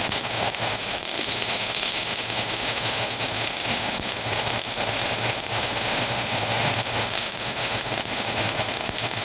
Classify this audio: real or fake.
fake